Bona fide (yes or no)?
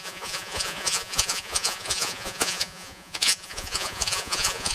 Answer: no